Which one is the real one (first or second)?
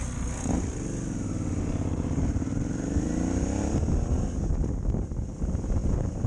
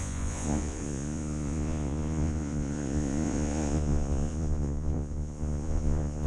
first